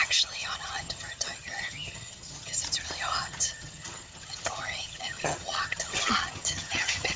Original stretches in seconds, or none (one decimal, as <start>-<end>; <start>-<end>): 2.6-3.2

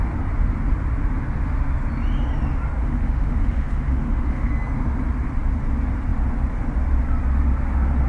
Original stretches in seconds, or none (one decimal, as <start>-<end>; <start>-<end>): 0.0-2.8; 4.5-8.1